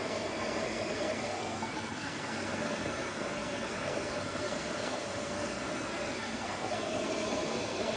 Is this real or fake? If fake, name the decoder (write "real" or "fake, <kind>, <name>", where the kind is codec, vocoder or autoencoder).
fake, codec, SNAC